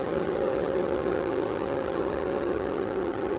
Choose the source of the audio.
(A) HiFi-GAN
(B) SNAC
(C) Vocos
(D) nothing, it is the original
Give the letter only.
A